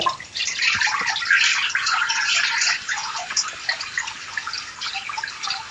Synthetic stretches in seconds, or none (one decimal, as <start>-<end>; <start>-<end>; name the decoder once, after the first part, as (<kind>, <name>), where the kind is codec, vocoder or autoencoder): 1.8-3.4 (vocoder, Vocos)